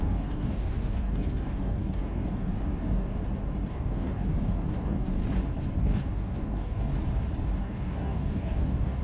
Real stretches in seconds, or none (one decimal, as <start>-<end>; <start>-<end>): 3.2-3.7; 5.2-5.8; 6.9-7.6